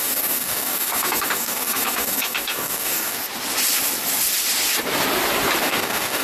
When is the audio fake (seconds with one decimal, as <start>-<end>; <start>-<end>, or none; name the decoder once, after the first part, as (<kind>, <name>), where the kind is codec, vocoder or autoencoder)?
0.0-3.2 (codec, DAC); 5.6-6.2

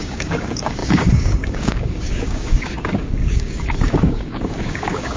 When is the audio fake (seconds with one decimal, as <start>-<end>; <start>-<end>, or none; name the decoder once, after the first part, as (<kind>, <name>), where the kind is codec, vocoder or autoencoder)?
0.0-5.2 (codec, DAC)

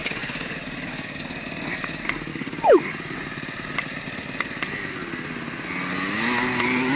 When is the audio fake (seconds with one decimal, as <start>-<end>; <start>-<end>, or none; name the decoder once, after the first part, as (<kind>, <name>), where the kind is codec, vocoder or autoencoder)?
0.0-1.2 (codec, DAC); 2.3-2.9

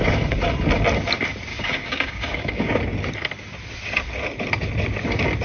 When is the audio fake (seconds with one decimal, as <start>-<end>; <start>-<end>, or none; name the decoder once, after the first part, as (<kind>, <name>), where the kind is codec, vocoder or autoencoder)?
1.5-2.8 (codec, DAC)

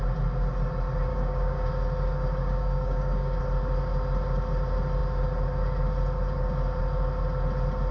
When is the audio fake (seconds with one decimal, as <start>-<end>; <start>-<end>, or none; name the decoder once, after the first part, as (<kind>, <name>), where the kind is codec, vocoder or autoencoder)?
1.1-1.7 (codec, DAC); 2.4-3.4

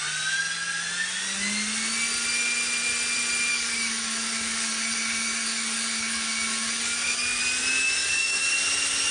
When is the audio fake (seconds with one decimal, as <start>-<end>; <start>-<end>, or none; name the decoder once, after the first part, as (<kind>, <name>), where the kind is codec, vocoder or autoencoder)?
3.5-7.4 (codec, DAC); 8.0-8.5